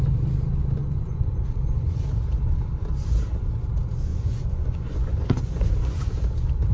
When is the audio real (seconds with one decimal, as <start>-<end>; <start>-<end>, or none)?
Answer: 0.0-0.8; 2.0-4.1; 6.1-6.7